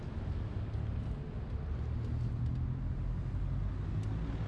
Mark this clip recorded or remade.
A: recorded